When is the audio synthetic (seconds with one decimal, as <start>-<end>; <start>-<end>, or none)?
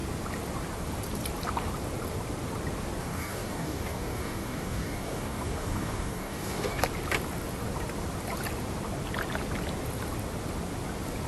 3.0-6.8